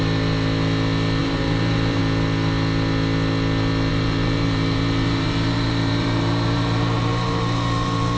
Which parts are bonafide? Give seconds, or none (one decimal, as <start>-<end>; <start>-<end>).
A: 0.0-1.2; 2.0-3.9